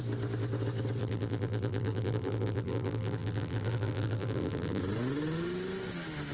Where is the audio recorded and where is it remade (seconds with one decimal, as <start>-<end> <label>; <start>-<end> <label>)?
0.0-1.0 recorded; 1.0-4.8 remade; 4.8-6.3 recorded